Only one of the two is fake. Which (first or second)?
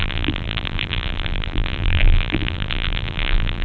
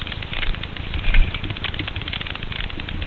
first